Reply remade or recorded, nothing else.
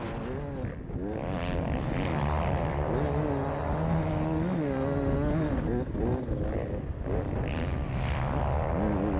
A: recorded